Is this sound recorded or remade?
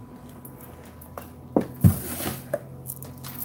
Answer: recorded